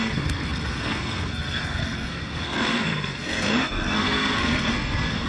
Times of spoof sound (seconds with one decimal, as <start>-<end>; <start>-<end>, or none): 0.0-5.3